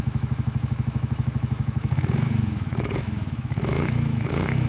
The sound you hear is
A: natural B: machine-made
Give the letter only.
B